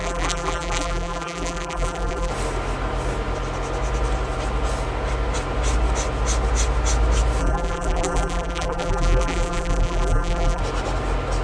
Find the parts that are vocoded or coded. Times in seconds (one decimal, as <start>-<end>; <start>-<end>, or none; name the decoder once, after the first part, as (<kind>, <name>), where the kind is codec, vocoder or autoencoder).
0.0-2.3 (vocoder, BigVGAN v2); 7.4-10.6